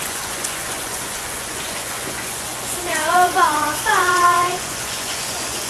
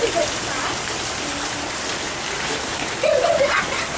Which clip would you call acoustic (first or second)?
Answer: second